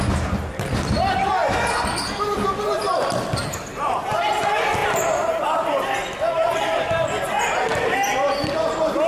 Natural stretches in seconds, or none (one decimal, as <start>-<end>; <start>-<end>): 0.0-1.4; 3.8-9.1